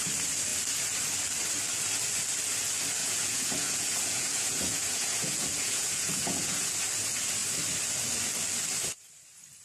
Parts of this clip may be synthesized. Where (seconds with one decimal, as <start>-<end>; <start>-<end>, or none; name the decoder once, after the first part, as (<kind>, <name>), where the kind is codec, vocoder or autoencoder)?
3.0-6.7 (vocoder, Vocos)